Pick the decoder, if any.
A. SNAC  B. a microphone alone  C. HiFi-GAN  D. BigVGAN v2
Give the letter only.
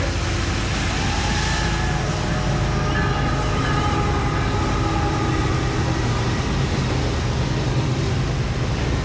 B